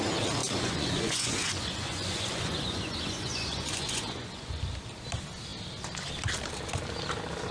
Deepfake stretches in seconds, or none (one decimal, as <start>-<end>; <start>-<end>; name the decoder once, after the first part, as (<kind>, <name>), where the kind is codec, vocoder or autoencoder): 0.4-4.6 (vocoder, Vocos)